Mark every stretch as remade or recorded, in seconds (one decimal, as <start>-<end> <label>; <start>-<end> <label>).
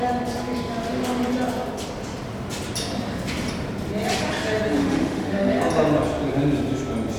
0.0-4.8 recorded; 4.8-5.6 remade; 5.6-7.2 recorded